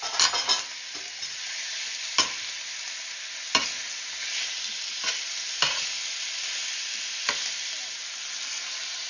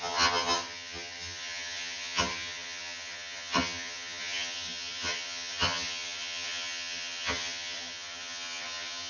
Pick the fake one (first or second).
second